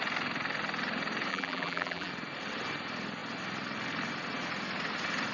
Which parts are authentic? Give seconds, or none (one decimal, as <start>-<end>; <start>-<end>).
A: 0.0-1.3; 2.1-5.3